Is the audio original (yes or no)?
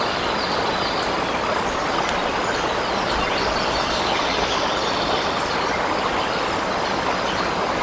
yes